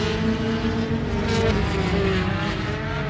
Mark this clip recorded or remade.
recorded